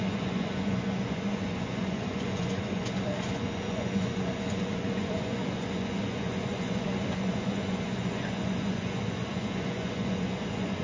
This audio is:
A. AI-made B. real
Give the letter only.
A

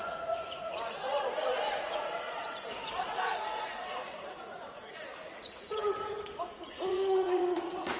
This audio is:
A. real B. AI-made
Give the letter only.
B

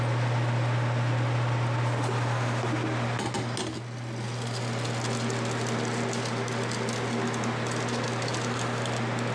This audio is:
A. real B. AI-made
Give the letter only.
A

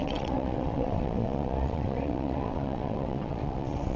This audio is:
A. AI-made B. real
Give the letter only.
A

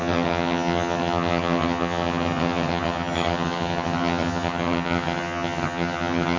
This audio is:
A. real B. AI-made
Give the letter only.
B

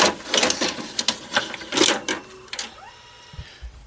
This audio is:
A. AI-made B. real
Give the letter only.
B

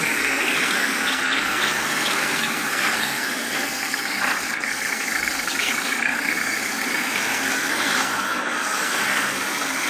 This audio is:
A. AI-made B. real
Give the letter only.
A